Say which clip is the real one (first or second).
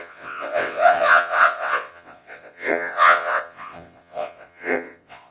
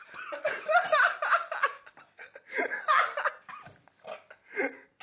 second